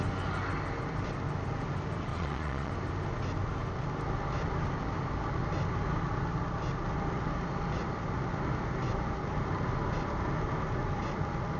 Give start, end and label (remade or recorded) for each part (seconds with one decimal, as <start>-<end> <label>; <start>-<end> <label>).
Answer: 0.0-2.1 recorded; 2.1-2.7 remade; 2.7-11.6 recorded